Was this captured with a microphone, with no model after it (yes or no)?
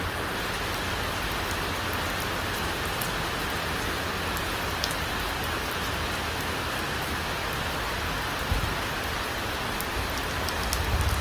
yes